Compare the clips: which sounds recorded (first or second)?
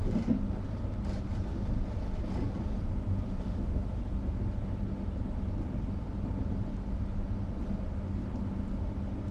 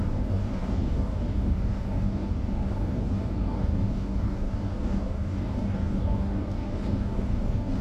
first